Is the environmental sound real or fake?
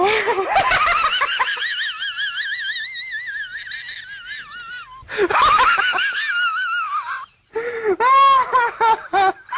real